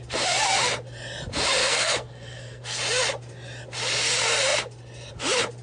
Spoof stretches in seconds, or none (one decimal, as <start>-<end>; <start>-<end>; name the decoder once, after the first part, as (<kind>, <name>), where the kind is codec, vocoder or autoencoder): 1.6-2.8 (codec, SNAC)